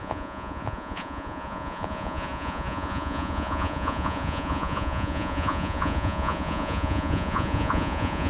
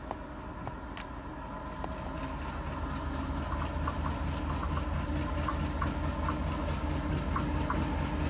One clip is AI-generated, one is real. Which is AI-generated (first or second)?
first